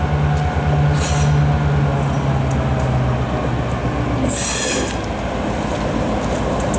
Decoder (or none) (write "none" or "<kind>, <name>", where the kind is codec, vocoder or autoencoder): none